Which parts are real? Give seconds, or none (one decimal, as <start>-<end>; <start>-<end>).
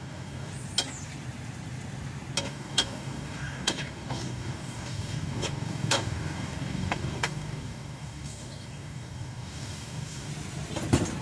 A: 0.5-2.4; 10.3-11.2